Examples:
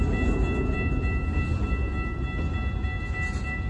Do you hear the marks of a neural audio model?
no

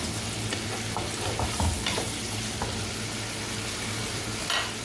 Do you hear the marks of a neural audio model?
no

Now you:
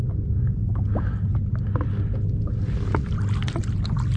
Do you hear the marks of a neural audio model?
no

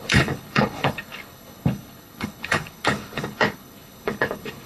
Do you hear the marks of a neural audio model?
yes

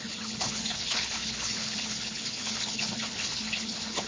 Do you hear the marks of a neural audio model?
yes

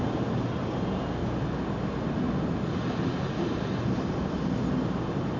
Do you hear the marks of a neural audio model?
no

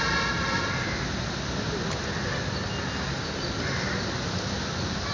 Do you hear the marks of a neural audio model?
no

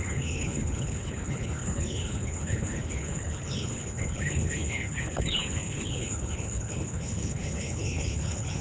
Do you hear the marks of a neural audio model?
yes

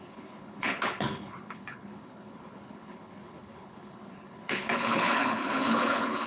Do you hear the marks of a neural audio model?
yes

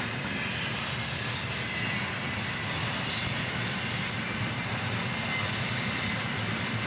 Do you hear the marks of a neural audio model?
no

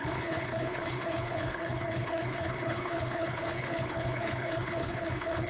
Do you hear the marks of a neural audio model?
yes